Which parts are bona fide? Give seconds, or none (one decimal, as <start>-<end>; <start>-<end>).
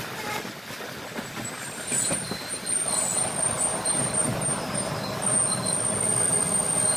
0.0-1.1; 2.6-3.7; 5.0-7.0